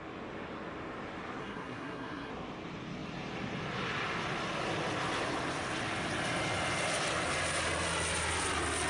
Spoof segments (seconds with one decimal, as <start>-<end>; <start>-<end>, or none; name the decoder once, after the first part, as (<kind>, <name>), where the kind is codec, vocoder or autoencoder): 1.4-2.3 (codec, SNAC)